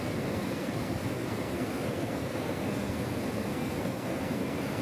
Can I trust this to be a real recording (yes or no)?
no